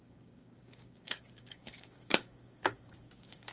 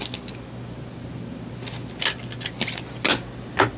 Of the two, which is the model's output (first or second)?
first